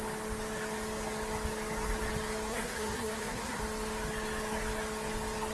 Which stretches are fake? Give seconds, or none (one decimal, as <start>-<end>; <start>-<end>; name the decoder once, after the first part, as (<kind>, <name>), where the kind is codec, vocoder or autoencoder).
2.5-3.6 (codec, SNAC)